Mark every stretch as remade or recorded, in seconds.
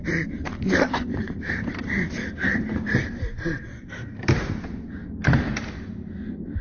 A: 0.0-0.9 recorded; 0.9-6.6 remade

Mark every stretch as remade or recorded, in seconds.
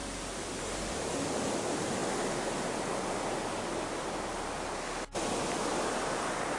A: 0.0-6.6 recorded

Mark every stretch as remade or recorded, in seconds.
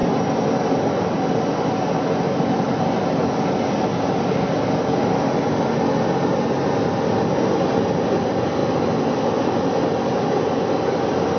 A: 0.0-1.7 remade; 1.7-8.6 recorded; 8.6-9.6 remade; 9.6-11.4 recorded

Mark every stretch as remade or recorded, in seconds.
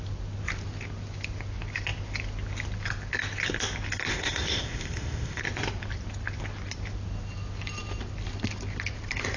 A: 0.0-4.1 recorded; 4.1-5.4 remade; 5.4-9.4 recorded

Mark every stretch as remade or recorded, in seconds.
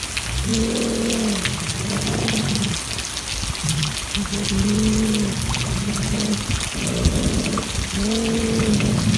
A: 0.0-9.2 recorded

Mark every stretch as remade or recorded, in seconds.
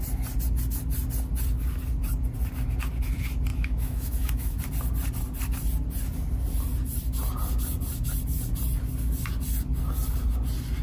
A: 0.0-3.5 recorded; 3.5-4.6 remade; 4.6-10.8 recorded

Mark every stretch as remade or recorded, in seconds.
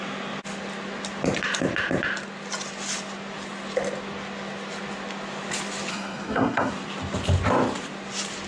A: 0.0-5.9 recorded; 5.9-6.7 remade; 6.7-8.5 recorded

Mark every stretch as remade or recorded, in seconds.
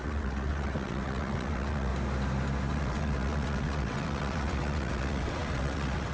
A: 0.0-1.9 remade; 1.9-2.7 recorded; 2.7-6.1 remade